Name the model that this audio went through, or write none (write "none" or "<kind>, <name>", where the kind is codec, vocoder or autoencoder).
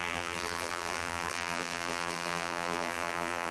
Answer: vocoder, BigVGAN v2